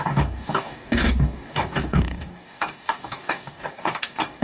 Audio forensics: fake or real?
fake